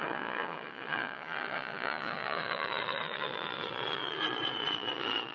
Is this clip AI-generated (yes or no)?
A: yes